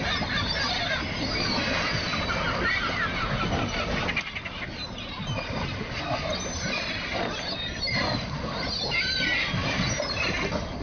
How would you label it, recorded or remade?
recorded